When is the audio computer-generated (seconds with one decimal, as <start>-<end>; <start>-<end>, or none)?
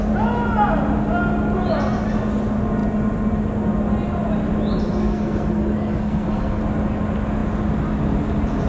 5.0-6.6